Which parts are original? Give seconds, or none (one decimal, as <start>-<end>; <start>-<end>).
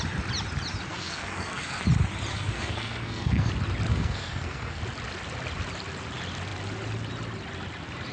0.0-0.9; 1.8-2.3; 3.5-3.9; 4.8-8.1